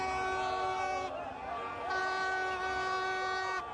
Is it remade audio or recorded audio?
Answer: recorded